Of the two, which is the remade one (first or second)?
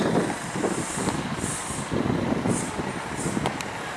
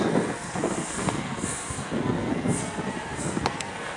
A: second